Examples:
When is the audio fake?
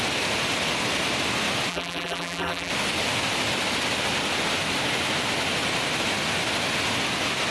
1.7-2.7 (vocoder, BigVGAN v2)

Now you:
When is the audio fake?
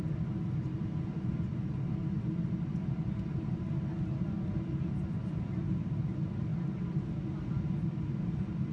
0.0-2.0 (vocoder, BigVGAN v2); 4.9-6.5; 7.8-8.7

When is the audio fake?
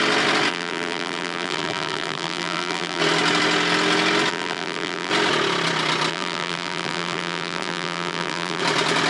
0.5-3.0 (vocoder, BigVGAN v2); 4.3-5.1; 6.1-8.6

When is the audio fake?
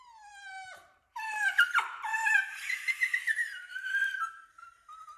0.8-1.6 (vocoder, BigVGAN v2); 2.1-4.5